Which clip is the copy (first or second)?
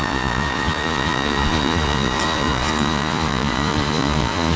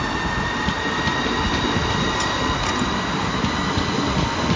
first